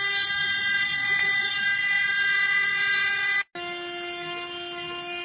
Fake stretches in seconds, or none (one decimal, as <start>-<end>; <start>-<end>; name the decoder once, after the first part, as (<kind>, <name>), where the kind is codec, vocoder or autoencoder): 0.4-3.5 (vocoder, Vocos)